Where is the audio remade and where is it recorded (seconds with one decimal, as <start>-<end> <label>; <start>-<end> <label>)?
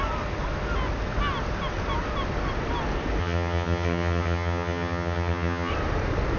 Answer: 0.0-3.2 recorded; 3.2-5.7 remade; 5.7-6.4 recorded